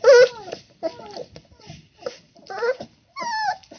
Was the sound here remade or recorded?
remade